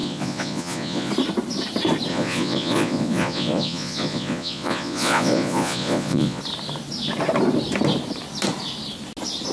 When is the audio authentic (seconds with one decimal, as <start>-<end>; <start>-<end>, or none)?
1.1-2.1; 6.4-9.5